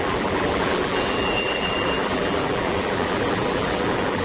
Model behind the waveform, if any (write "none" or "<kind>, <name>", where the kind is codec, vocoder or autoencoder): vocoder, BigVGAN v2